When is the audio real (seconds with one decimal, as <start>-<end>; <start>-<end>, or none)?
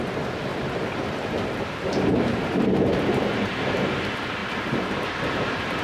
0.0-0.5; 4.0-4.4